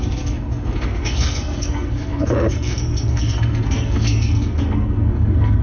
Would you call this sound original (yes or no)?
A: no